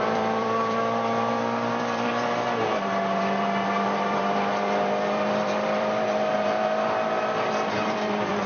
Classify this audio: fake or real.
fake